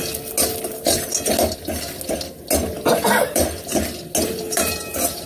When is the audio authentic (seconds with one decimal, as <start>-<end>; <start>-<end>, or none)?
0.0-0.7; 1.1-2.7; 3.4-4.2